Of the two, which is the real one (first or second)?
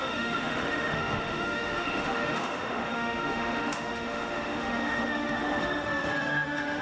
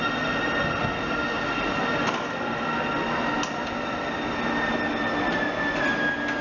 second